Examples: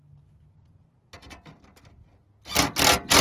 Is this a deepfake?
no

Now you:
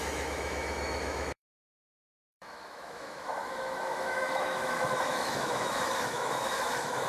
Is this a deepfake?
yes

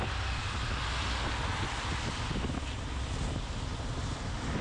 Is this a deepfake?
no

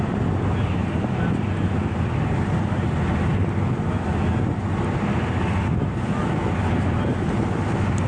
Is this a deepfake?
no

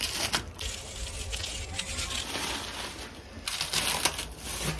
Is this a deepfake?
no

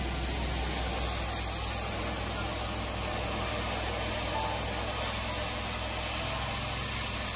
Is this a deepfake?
no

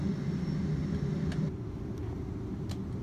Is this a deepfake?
no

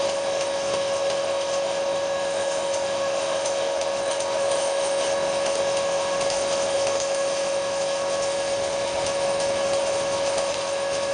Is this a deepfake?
yes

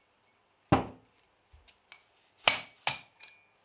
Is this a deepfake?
no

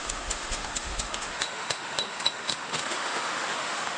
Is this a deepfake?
yes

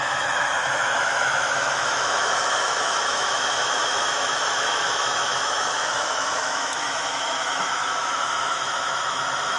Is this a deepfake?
yes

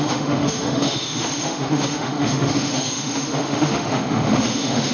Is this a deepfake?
yes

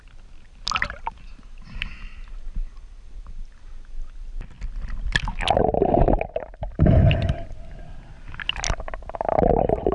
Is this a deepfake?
no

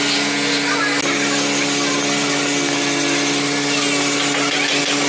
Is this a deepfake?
no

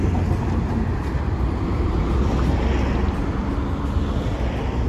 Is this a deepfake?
no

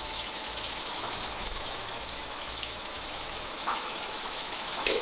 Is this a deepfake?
yes